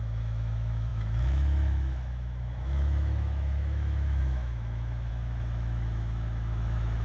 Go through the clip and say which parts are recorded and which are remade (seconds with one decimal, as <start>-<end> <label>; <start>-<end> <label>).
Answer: 0.0-7.0 remade

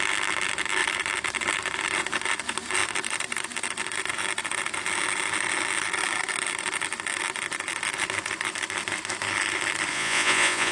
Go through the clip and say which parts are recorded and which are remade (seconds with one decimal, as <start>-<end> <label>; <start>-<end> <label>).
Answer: 0.0-9.9 recorded; 9.9-10.7 remade

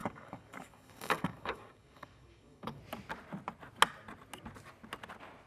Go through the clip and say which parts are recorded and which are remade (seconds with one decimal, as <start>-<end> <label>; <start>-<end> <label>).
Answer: 0.0-2.8 remade; 2.8-5.5 recorded